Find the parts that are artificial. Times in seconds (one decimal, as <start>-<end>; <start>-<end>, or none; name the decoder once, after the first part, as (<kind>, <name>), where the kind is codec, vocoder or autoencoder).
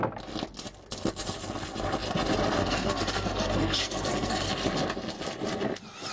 2.6-4.5 (codec, SNAC)